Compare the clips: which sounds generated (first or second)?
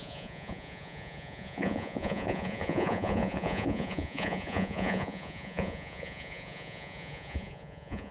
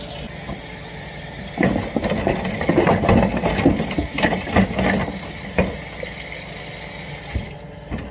first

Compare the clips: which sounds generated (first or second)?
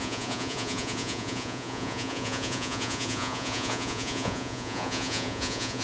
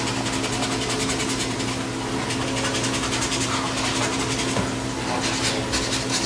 first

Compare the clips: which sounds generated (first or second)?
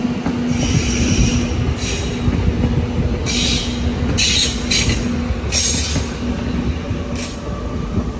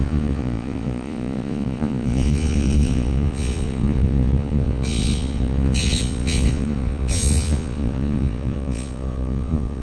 second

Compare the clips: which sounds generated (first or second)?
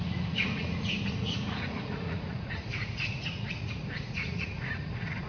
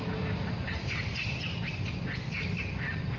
first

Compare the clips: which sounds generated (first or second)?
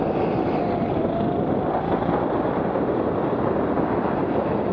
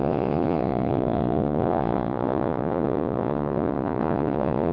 second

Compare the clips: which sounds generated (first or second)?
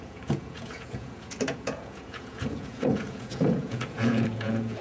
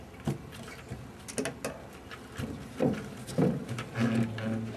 first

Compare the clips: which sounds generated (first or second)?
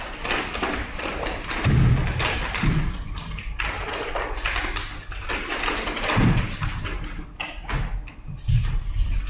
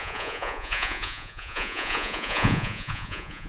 second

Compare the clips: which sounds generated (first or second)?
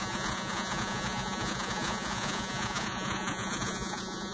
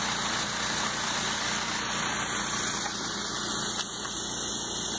first